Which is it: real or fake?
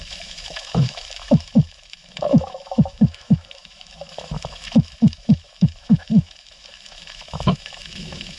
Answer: fake